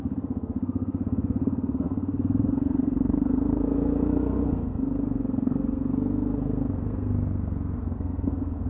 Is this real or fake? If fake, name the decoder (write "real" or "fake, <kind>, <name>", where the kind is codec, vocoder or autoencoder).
fake, codec, SNAC